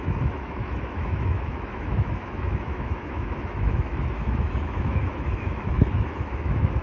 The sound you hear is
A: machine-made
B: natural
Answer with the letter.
A